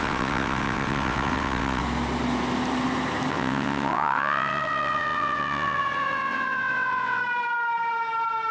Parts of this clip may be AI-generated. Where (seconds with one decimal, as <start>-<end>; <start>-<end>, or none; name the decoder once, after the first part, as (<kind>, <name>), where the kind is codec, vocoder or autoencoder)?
0.0-1.8 (vocoder, WaveNeXt); 3.3-7.2